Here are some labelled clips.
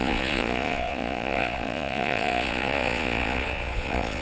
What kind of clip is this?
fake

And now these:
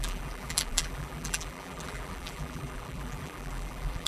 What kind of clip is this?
fake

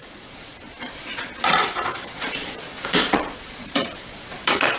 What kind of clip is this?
fake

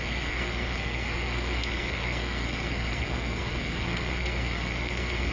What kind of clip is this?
fake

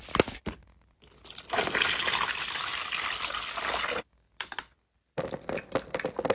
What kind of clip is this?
real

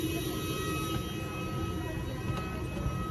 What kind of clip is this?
real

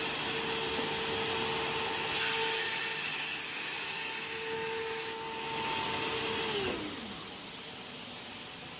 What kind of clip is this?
real